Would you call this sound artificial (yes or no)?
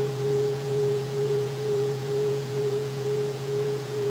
yes